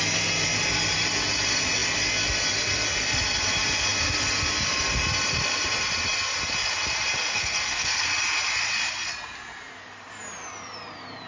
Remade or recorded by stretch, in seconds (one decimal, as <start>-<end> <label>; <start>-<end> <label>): 0.0-7.3 recorded; 7.3-8.0 remade; 8.0-11.3 recorded